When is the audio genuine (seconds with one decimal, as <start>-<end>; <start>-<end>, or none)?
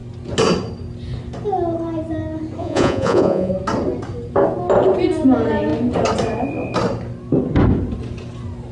0.0-2.6; 3.5-8.7